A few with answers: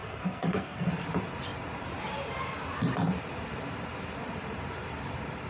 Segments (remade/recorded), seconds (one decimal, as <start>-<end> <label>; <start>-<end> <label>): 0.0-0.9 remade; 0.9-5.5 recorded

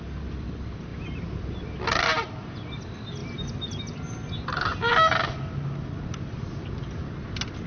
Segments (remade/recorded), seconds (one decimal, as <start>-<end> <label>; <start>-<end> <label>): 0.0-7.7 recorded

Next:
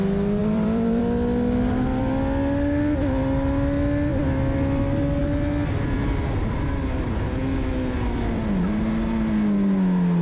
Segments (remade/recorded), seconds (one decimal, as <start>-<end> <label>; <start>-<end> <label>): 0.0-0.4 recorded; 0.4-1.0 remade; 1.0-10.2 recorded

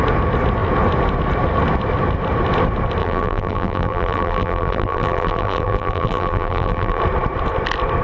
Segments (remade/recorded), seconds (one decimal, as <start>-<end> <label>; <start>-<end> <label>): 0.0-3.0 recorded; 3.0-7.0 remade; 7.0-8.0 recorded

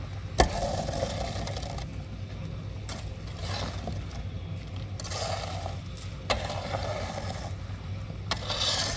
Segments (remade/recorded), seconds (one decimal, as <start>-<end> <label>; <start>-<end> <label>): 0.0-9.0 recorded

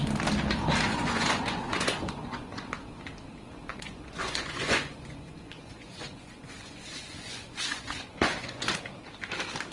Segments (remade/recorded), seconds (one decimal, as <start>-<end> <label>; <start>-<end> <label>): 0.0-0.9 recorded; 0.9-2.7 remade; 2.7-3.7 recorded; 3.7-8.8 remade; 8.8-9.7 recorded

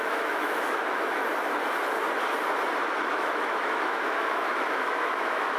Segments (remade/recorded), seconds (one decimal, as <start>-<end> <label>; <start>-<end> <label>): 0.0-1.2 remade; 1.2-3.1 recorded; 3.1-5.6 remade

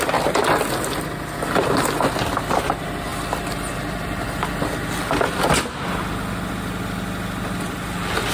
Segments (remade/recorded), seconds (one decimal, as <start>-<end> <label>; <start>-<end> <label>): 0.0-8.3 recorded